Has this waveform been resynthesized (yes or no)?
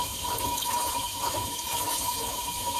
yes